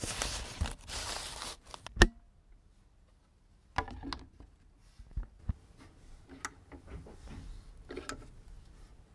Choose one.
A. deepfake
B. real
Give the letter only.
B